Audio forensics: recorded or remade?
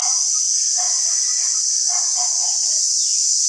recorded